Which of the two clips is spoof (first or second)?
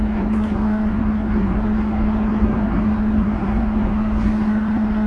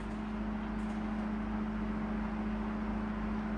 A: first